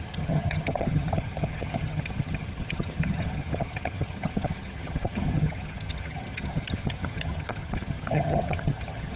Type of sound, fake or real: fake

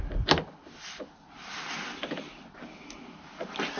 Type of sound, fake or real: real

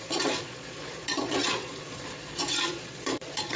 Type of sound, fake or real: fake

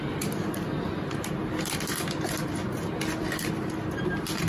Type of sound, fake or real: fake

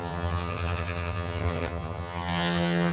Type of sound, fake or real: fake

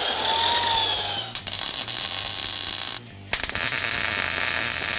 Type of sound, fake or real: real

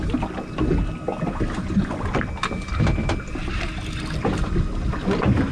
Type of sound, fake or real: real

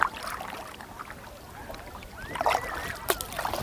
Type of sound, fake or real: real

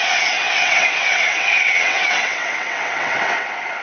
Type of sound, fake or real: fake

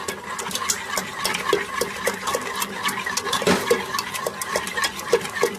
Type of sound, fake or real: real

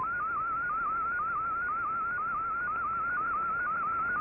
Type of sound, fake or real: real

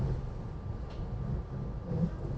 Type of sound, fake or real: real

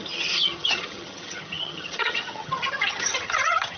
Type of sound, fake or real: fake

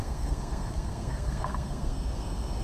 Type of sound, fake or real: fake